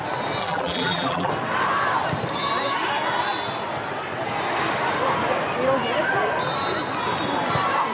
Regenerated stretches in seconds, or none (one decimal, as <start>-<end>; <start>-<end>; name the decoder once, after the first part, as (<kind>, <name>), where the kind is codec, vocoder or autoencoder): 0.4-1.3 (vocoder, BigVGAN v2)